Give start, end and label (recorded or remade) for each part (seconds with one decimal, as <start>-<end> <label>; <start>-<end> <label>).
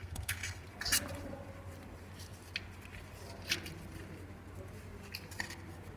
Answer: 0.0-0.6 remade; 0.6-6.0 recorded